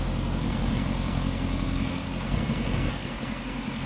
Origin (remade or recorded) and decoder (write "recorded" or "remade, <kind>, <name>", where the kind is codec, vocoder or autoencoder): remade, codec, SNAC